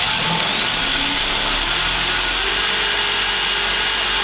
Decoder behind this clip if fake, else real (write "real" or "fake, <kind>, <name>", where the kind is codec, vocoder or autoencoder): real